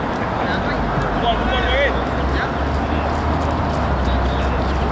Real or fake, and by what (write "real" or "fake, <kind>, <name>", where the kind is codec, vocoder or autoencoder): real